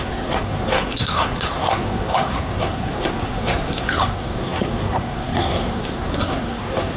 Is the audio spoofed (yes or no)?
yes